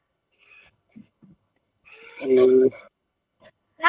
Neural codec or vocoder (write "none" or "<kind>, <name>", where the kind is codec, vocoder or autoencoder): codec, HILCodec